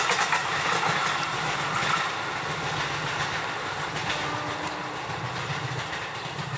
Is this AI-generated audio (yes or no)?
no